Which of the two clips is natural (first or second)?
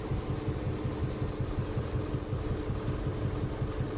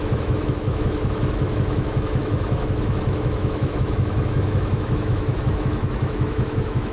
first